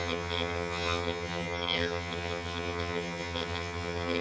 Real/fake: fake